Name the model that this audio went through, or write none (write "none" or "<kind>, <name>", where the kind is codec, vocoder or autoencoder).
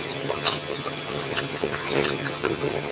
vocoder, HiFi-GAN